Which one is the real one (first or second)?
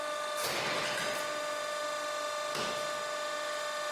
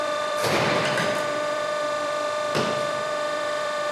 first